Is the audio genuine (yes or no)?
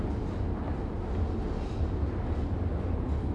yes